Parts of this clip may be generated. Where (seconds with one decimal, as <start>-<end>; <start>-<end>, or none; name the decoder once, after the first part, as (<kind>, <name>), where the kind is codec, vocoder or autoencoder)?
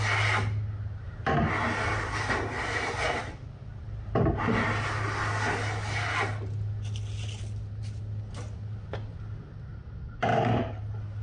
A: none